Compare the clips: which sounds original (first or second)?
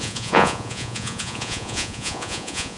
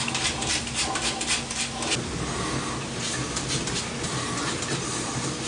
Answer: second